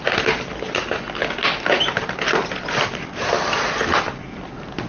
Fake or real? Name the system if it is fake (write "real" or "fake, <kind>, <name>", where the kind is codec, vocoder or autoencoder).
real